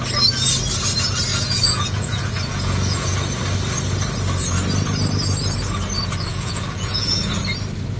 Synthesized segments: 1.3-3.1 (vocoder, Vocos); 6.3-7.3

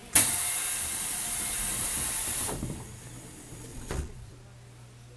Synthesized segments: 3.7-4.3 (vocoder, Vocos)

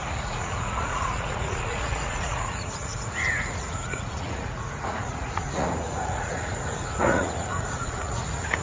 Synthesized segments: 0.0-8.6 (vocoder, Vocos)

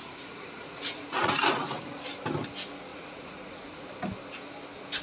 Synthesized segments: 0.0-1.3 (vocoder, Vocos); 2.9-3.9

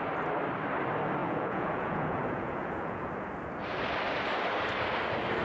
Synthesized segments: 1.2-3.1 (vocoder, Vocos)

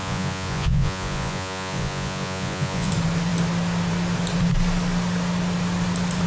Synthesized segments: 0.0-2.9 (vocoder, Vocos)

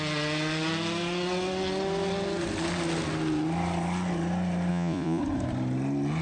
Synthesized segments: 4.7-5.2 (vocoder, Vocos)